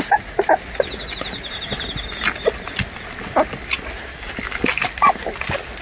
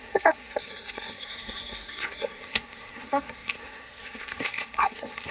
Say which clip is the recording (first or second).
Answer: first